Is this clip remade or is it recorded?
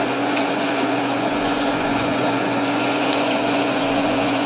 remade